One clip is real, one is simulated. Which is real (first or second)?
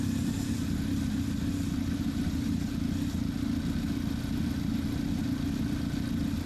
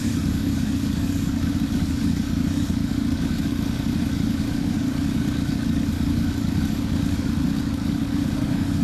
first